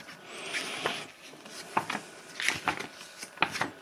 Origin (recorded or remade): recorded